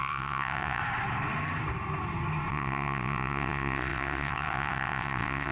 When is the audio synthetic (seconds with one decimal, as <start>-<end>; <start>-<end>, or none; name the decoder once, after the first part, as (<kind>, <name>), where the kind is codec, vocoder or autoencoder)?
0.0-0.8 (vocoder, WaveNeXt); 2.5-5.5

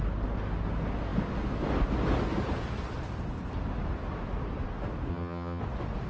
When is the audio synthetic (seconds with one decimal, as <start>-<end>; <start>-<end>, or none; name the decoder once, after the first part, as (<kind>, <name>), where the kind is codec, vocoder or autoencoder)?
5.1-5.6 (vocoder, HiFi-GAN)

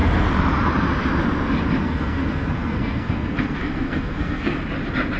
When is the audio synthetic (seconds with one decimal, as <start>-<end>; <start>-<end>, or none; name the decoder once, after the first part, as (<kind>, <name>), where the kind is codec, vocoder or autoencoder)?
1.8-4.6 (codec, SNAC)

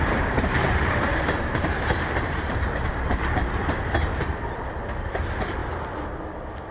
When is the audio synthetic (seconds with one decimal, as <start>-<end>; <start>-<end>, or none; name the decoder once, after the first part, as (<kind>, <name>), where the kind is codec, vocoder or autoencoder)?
0.0-5.6 (vocoder, BigVGAN v2)

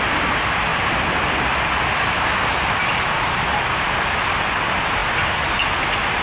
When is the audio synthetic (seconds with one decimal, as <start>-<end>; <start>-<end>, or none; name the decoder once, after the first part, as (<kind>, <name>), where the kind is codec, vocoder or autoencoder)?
none

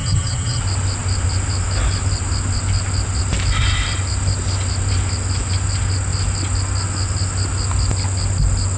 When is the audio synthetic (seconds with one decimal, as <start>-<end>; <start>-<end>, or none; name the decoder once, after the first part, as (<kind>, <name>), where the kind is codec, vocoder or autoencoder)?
0.0-0.6 (vocoder, HiFi-GAN)

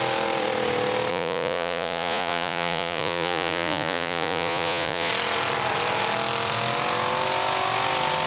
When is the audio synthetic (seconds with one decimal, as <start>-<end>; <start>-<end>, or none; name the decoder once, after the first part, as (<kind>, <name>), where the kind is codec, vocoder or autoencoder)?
1.1-5.1 (vocoder, Vocos)

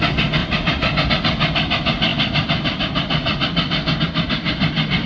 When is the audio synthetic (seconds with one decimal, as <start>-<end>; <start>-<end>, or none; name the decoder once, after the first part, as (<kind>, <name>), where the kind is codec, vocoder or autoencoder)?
0.4-1.1 (vocoder, BigVGAN v2); 2.1-4.0